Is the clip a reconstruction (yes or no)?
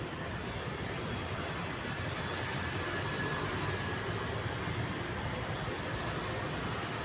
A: no